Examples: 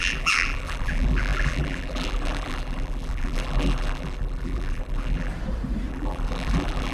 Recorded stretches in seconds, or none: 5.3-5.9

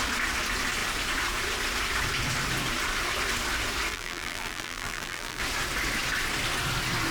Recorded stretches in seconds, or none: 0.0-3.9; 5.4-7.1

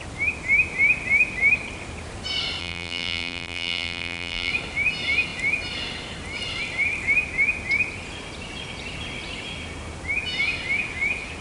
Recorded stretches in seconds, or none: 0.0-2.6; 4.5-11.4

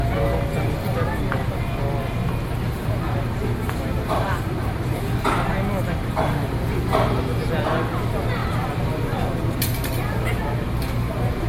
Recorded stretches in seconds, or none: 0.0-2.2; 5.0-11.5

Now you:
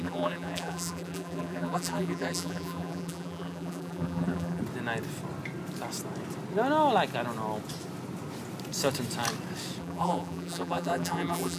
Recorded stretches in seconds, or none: 4.6-9.8